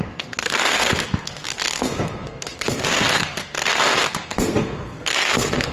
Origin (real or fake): fake